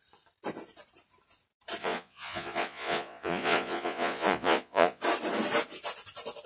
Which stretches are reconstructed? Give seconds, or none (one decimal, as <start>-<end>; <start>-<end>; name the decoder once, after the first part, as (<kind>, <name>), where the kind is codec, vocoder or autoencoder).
1.8-5.0 (vocoder, Vocos)